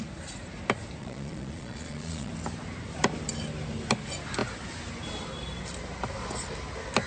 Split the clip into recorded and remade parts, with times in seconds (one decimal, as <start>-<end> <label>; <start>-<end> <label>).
0.0-1.0 recorded; 1.0-2.3 remade; 2.3-7.1 recorded